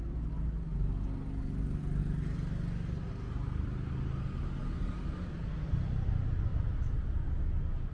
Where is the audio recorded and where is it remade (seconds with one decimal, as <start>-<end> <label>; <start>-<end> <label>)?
0.0-7.9 recorded